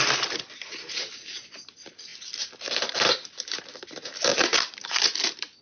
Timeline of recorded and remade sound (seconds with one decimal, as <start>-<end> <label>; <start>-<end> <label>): 0.0-4.3 recorded; 4.3-5.0 remade; 5.0-5.6 recorded

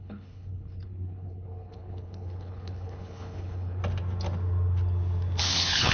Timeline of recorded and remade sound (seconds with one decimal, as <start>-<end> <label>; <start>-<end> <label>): 0.0-3.8 remade; 3.8-5.4 recorded; 5.4-5.9 remade

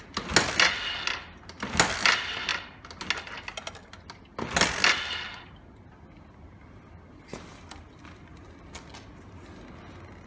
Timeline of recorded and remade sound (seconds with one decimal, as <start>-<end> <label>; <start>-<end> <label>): 0.0-10.3 recorded